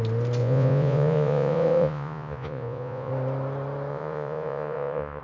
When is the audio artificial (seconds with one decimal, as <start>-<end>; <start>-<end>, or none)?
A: 0.4-3.1; 3.9-5.2

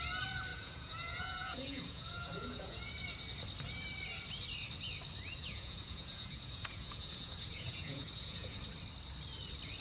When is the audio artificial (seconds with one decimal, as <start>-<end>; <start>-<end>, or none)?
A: 0.5-2.9; 5.4-8.6

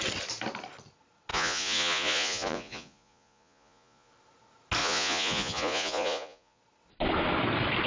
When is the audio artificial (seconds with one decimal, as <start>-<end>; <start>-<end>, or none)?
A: 1.3-4.1; 4.8-6.6

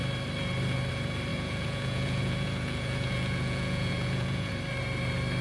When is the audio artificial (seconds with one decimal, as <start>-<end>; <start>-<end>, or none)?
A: 1.3-4.5

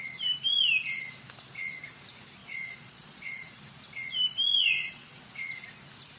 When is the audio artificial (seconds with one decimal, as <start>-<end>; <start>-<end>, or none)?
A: 2.4-3.5; 4.5-5.2

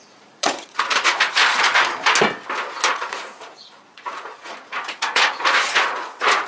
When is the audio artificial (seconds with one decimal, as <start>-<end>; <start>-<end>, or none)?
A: 0.0-1.7; 2.9-6.5